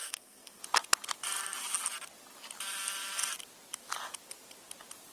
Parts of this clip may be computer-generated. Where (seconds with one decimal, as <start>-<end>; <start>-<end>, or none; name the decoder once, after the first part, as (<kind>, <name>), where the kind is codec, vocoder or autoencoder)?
0.0-0.6 (codec, SNAC)